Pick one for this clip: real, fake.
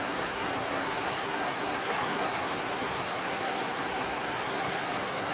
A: fake